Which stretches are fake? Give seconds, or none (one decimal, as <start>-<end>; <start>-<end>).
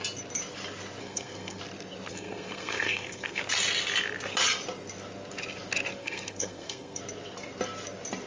1.0-1.6; 2.1-3.4; 6.0-7.0